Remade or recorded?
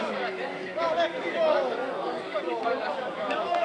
remade